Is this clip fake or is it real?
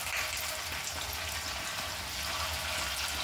real